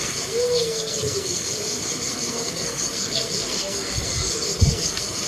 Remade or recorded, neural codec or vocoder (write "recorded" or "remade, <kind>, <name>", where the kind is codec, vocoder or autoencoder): remade, codec, SNAC